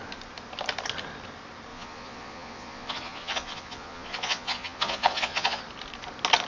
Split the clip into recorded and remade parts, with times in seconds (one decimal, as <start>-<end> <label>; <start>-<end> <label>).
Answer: 0.0-1.7 recorded; 1.7-5.6 remade; 5.6-6.5 recorded